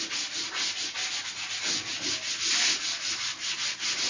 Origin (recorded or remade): recorded